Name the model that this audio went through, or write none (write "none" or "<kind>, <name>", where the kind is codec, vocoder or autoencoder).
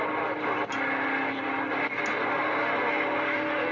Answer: none